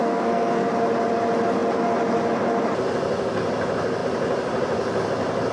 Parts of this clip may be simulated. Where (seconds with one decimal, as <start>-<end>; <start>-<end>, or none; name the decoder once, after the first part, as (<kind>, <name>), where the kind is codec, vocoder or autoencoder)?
0.0-0.7 (codec, SNAC)